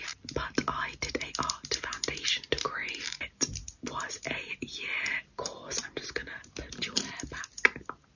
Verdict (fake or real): real